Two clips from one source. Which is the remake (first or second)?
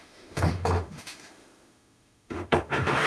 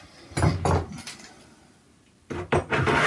first